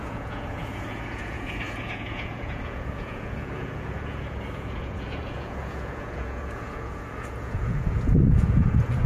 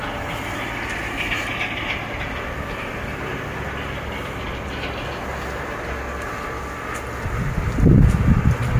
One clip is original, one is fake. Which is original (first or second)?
second